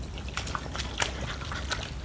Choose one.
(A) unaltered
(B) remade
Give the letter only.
A